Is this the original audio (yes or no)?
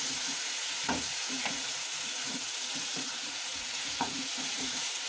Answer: no